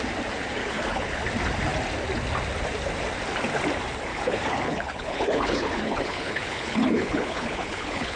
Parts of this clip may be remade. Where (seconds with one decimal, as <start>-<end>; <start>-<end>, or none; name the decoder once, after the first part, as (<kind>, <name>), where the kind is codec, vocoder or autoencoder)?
0.6-1.2 (codec, HILCodec); 4.1-8.2